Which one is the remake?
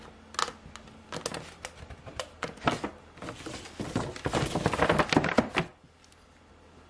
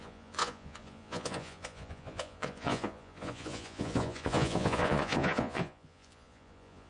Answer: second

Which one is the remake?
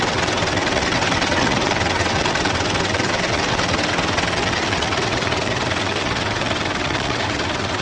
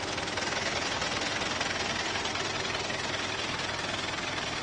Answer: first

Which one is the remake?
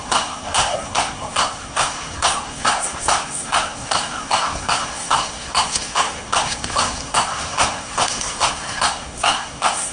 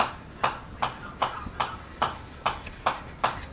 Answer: first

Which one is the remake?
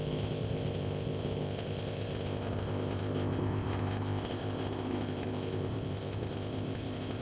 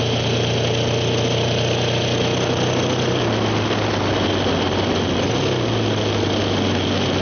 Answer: first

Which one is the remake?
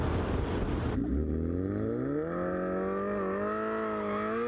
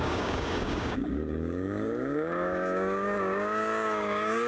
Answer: second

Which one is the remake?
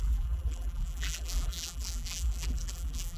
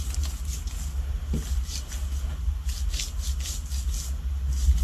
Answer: first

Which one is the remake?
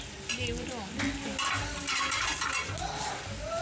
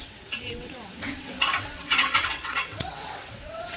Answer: second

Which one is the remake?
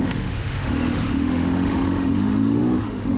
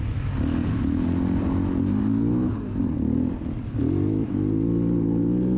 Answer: first